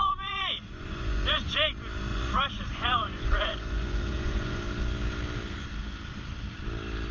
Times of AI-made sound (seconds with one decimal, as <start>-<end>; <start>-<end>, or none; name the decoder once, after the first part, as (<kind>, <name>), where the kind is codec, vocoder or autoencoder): 0.0-1.7 (vocoder, Vocos); 2.1-4.6